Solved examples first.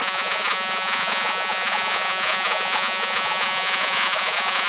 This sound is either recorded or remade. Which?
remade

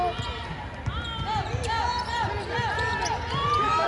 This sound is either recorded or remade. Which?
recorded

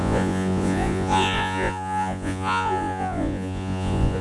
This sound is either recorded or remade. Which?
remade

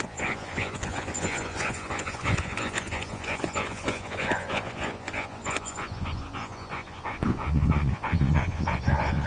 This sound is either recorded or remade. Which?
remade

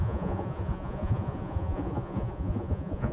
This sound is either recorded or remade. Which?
remade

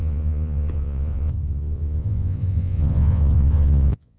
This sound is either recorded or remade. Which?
remade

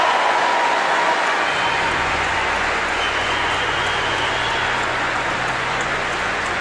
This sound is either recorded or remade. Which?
remade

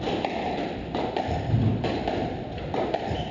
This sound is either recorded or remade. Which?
recorded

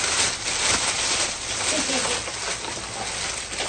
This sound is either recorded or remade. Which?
recorded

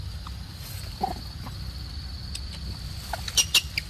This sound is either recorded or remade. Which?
recorded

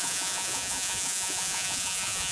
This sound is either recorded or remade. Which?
remade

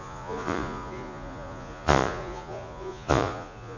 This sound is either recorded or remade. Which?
remade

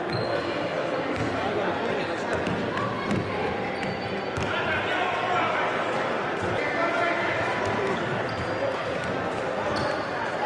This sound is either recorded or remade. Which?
recorded